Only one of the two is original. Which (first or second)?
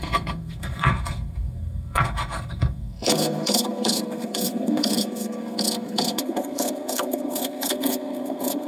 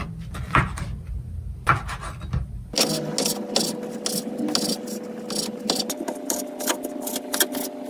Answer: second